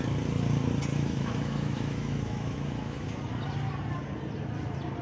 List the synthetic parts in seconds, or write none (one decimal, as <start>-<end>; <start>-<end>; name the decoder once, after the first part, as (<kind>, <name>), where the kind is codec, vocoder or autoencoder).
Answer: 0.9-3.2 (autoencoder, DAC-VAE)